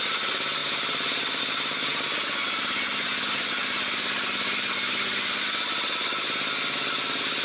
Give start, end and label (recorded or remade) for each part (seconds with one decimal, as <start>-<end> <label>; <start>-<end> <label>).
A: 0.0-0.6 recorded; 0.6-1.4 remade; 1.4-7.4 recorded

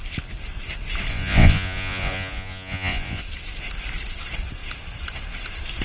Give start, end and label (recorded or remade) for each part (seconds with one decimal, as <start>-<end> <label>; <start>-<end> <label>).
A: 0.0-1.1 recorded; 1.1-3.2 remade; 3.2-5.8 recorded